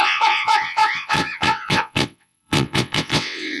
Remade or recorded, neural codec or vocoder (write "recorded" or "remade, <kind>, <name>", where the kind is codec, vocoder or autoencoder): remade, vocoder, WaveNeXt